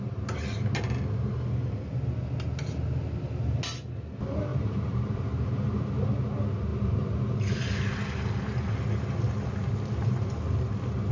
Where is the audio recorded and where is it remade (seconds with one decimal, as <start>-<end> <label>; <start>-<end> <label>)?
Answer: 0.0-4.5 recorded; 4.5-6.1 remade; 6.1-6.7 recorded; 6.7-7.6 remade; 7.6-11.1 recorded